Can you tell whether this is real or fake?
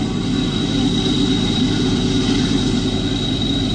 fake